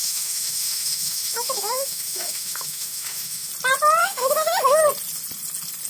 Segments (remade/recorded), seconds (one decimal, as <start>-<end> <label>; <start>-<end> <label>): 0.0-3.5 remade; 3.5-4.0 recorded; 4.0-4.8 remade; 4.8-5.9 recorded